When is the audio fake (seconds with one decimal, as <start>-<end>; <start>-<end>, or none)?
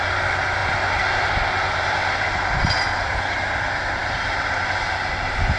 none